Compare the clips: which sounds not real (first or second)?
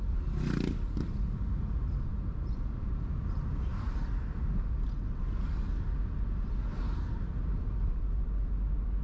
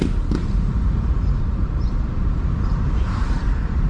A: second